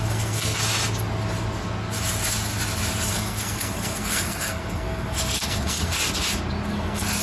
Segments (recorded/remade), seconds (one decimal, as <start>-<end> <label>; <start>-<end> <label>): 0.0-0.6 remade; 0.6-3.1 recorded; 3.1-6.0 remade; 6.0-6.7 recorded; 6.7-7.2 remade